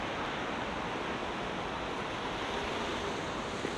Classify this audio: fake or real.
real